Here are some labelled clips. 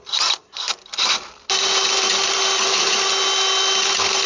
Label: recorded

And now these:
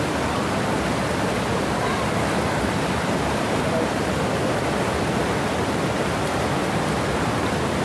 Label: recorded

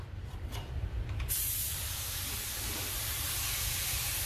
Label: remade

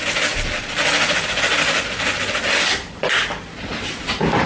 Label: recorded